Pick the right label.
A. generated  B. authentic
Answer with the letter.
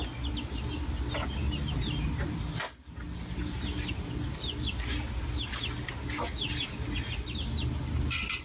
B